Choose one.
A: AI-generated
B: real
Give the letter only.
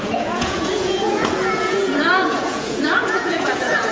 A